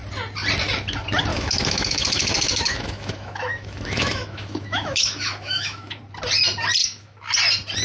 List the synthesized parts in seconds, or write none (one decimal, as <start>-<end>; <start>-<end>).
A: 1.3-6.0; 6.8-7.3